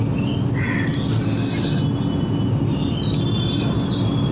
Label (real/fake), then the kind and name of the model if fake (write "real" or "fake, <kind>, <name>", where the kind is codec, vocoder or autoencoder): real